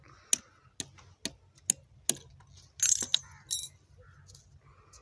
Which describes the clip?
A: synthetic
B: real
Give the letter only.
B